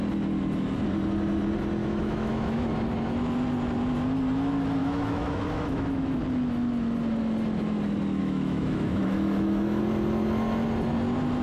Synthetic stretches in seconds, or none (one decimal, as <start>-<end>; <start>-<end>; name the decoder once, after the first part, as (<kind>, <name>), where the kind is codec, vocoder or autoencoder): 1.8-2.7 (autoencoder, DAC-VAE); 4.8-6.2; 8.2-9.8